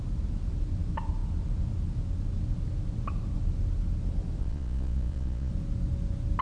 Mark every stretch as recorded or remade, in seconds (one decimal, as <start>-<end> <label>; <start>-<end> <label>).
0.0-4.4 recorded; 4.4-5.5 remade; 5.5-6.4 recorded